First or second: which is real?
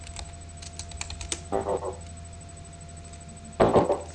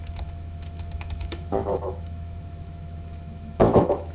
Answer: first